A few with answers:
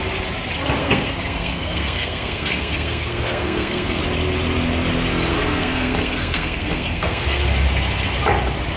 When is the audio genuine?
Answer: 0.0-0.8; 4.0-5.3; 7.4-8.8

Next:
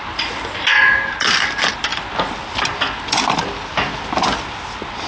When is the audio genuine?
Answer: 0.0-5.1